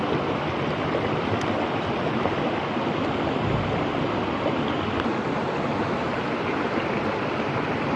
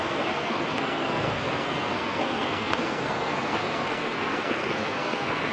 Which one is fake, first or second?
second